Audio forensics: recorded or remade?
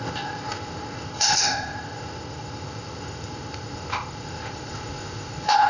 remade